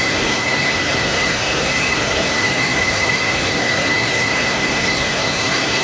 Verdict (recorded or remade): remade